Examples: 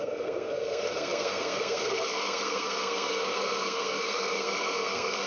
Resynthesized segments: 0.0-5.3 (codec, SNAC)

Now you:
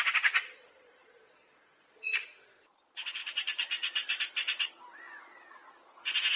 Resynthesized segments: 0.0-3.2 (vocoder, Vocos); 5.2-6.4

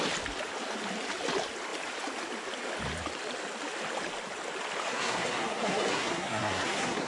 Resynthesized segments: 4.9-7.1 (codec, SNAC)

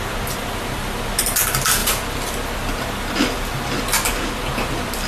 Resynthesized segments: 0.0-5.1 (vocoder, BigVGAN v2)

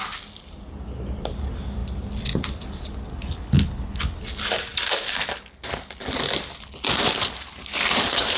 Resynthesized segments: 3.1-4.2 (codec, HILCodec)

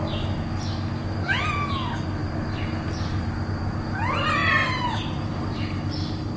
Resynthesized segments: 4.4-6.4 (vocoder, BigVGAN v2)

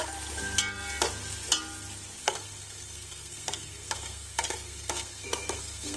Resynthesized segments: 2.2-6.0 (codec, SNAC)

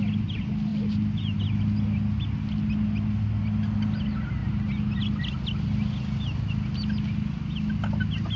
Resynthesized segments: none